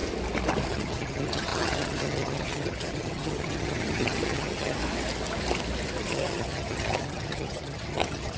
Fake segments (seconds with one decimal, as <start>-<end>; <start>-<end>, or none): 0.7-4.8; 6.0-8.4